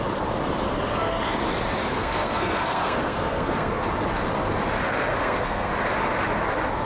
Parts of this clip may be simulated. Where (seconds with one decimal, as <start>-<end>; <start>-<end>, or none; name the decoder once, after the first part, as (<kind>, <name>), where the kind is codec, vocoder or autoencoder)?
1.8-3.8 (codec, SNAC); 5.1-5.7